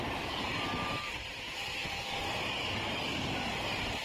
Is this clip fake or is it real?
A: real